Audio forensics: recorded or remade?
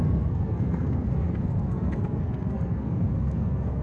remade